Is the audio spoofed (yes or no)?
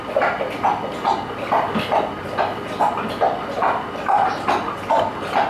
no